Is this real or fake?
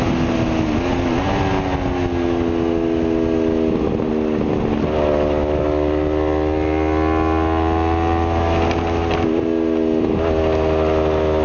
real